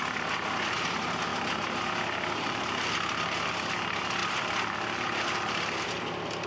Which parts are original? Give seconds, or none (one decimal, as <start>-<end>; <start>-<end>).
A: 0.0-1.3; 2.7-4.2; 6.1-6.5